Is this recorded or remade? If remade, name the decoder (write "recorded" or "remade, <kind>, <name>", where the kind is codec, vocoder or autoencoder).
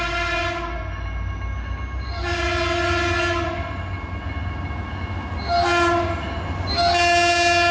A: recorded